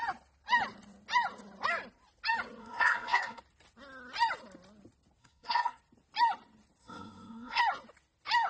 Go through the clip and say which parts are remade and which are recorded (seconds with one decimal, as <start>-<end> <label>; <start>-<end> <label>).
0.0-2.6 recorded; 2.6-3.4 remade; 3.4-5.2 recorded; 5.2-5.8 remade; 5.8-6.8 recorded; 6.8-7.6 remade; 7.6-8.5 recorded